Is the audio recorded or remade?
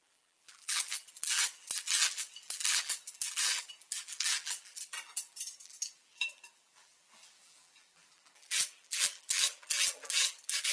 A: remade